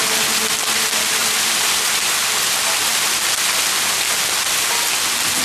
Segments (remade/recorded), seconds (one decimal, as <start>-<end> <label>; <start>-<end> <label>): 0.0-1.2 recorded; 1.2-1.8 remade; 1.8-5.4 recorded